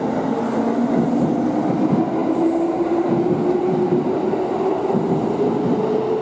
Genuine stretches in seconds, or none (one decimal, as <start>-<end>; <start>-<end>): 0.0-6.2